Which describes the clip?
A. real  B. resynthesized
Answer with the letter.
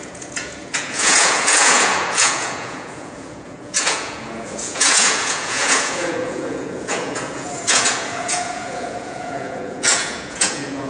B